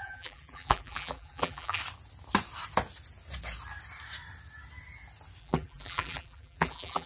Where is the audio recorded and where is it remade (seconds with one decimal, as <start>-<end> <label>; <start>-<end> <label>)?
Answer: 0.0-1.8 remade; 1.8-5.4 recorded; 5.4-7.1 remade